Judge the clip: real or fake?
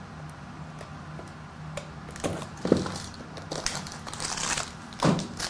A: real